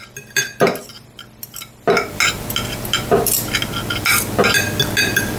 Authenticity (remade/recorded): recorded